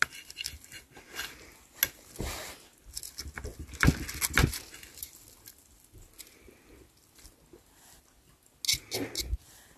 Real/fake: real